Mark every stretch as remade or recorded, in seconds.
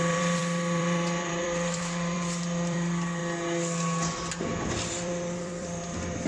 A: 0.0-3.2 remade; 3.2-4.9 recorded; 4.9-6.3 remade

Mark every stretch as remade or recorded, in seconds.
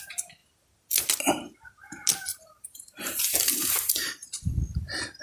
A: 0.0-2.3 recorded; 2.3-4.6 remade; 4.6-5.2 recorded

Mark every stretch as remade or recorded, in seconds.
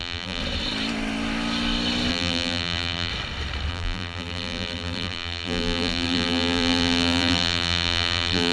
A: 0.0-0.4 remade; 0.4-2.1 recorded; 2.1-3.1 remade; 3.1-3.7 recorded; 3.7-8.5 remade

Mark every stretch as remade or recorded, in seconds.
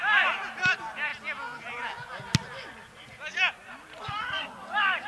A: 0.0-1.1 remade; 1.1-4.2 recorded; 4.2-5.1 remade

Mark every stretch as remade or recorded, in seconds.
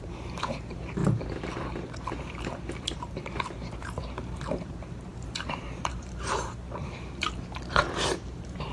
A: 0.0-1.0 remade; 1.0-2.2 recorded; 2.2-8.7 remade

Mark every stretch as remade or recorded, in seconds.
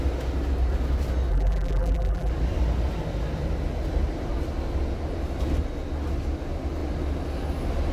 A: 0.0-1.3 recorded; 1.3-2.3 remade; 2.3-7.9 recorded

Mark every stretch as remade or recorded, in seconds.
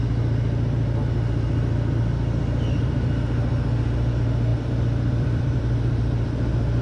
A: 0.0-4.5 recorded; 4.5-5.6 remade; 5.6-6.8 recorded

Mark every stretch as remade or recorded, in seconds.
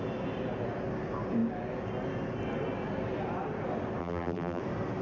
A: 0.0-4.0 recorded; 4.0-4.6 remade; 4.6-5.0 recorded